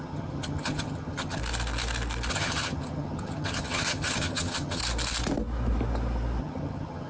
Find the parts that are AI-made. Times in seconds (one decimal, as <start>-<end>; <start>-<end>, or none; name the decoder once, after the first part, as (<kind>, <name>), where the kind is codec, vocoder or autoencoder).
0.0-1.4 (vocoder, HiFi-GAN); 2.3-4.8; 6.4-7.1